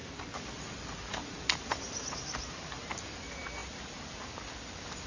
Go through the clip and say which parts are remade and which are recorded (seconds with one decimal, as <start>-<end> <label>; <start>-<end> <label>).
0.0-5.1 recorded